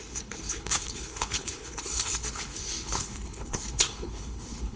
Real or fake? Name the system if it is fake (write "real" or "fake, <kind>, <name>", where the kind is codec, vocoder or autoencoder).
fake, codec, HILCodec